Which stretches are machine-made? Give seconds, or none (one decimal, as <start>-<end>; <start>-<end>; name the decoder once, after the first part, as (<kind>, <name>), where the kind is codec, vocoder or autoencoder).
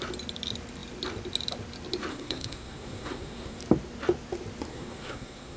2.1-3.6 (codec, SNAC); 4.7-5.6